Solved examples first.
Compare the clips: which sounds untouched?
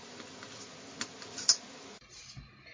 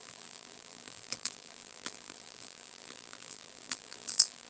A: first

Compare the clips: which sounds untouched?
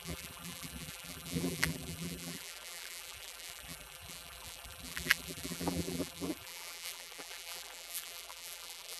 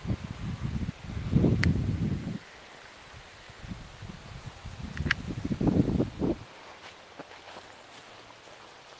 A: second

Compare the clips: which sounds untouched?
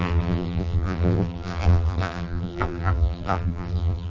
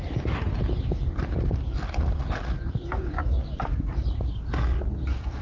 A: second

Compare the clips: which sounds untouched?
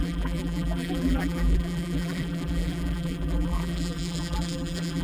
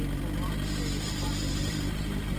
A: second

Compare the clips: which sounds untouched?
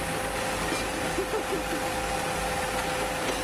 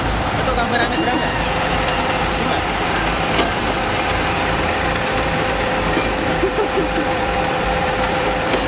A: first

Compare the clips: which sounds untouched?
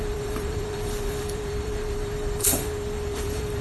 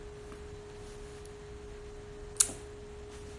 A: second